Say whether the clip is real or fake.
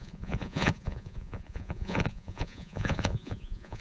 fake